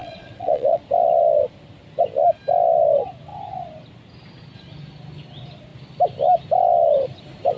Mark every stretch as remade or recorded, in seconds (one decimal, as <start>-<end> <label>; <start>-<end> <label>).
0.0-0.8 remade; 0.8-7.6 recorded